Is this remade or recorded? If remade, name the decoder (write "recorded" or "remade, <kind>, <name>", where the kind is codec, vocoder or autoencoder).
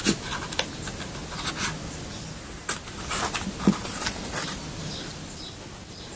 recorded